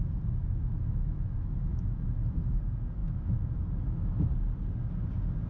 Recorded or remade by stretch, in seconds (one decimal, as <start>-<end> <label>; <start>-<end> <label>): 0.0-0.4 recorded; 0.4-2.2 remade; 2.2-3.0 recorded; 3.0-4.3 remade; 4.3-5.5 recorded